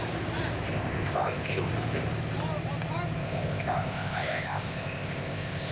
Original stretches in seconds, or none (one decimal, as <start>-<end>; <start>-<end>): 0.0-0.7; 1.7-3.2